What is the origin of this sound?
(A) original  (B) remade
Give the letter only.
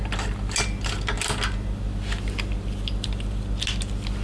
A